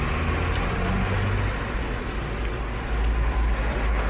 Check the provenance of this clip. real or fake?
real